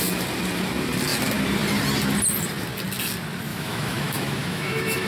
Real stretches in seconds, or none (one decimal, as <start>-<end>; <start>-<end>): 0.0-3.5